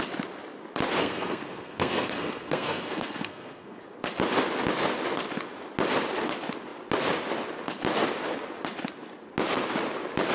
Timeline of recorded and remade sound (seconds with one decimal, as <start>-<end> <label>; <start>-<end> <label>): 0.0-1.0 recorded; 1.0-3.8 remade; 3.8-10.3 recorded